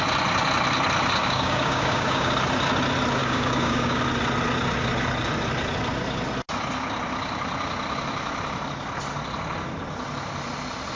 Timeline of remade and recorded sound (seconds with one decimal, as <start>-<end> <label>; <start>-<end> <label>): 0.0-1.2 recorded; 1.2-2.3 remade; 2.3-3.2 recorded; 3.2-4.0 remade; 4.0-11.0 recorded